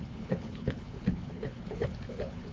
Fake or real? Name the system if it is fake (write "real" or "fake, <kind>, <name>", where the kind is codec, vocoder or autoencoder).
fake, codec, HILCodec